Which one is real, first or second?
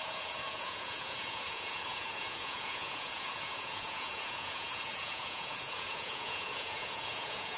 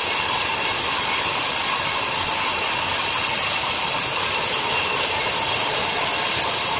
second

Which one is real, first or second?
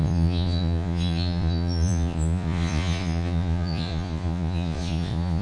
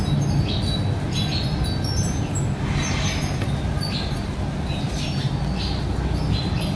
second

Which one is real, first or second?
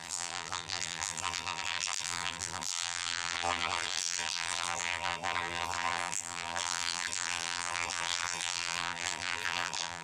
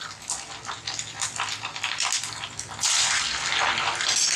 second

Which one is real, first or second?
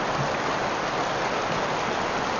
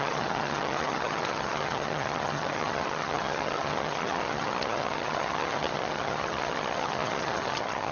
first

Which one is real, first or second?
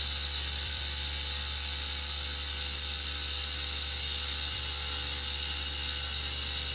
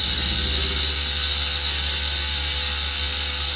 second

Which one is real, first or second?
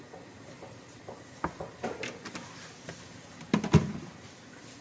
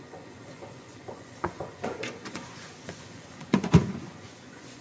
first